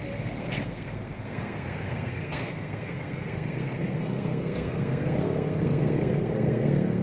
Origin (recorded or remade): remade